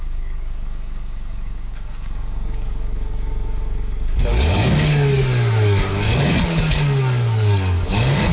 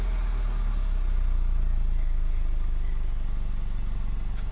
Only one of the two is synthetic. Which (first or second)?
first